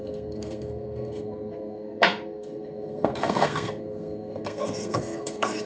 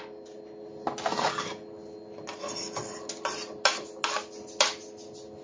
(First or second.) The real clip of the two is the second